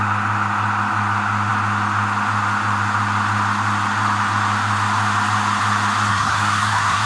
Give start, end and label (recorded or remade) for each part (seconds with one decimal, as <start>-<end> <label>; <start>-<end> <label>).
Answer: 0.0-6.1 recorded; 6.1-7.1 remade

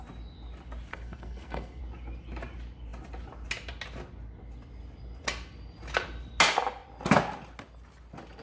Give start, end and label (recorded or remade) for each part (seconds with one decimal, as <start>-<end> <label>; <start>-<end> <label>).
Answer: 0.0-0.9 recorded; 0.9-1.8 remade; 1.8-8.4 recorded

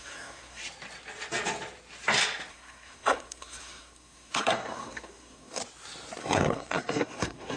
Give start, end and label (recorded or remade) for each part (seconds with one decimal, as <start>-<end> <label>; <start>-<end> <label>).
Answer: 0.0-0.6 remade; 0.6-2.5 recorded; 2.5-5.6 remade; 5.6-6.2 recorded; 6.2-7.6 remade